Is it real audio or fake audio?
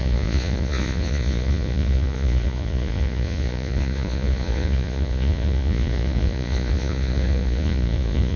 fake